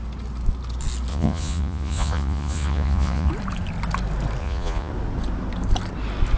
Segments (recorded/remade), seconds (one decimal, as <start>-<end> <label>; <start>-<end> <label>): 0.0-1.1 recorded; 1.1-3.3 remade; 3.3-4.4 recorded; 4.4-4.9 remade; 4.9-6.4 recorded